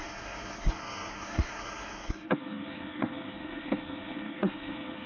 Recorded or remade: remade